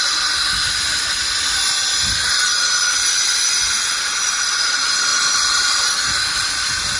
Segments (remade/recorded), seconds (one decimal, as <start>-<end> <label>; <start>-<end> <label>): 0.0-7.0 recorded